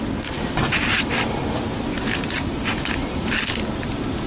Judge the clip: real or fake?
real